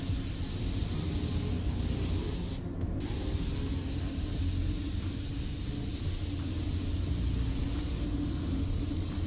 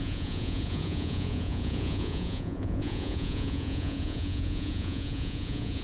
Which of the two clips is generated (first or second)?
second